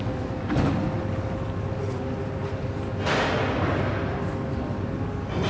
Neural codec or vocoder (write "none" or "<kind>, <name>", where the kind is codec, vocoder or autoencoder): none